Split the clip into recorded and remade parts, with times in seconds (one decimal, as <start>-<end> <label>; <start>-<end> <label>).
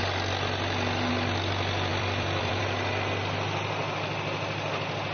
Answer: 0.0-1.9 recorded; 1.9-2.6 remade; 2.6-5.1 recorded